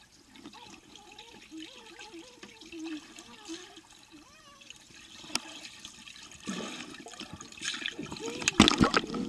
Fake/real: real